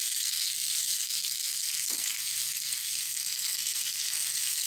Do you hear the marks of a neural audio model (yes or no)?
yes